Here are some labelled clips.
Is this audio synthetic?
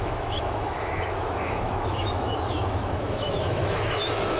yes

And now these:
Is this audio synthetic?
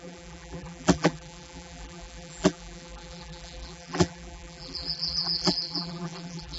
yes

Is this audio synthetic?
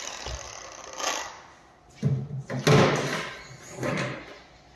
no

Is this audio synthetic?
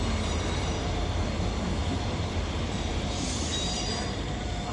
yes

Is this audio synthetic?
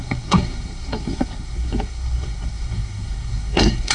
yes